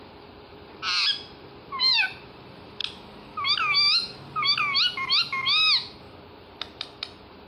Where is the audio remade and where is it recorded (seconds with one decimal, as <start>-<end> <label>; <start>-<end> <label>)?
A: 0.0-2.8 remade; 2.8-7.5 recorded